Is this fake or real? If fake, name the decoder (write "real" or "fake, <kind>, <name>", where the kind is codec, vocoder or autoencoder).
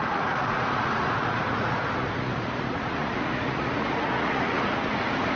fake, vocoder, Vocos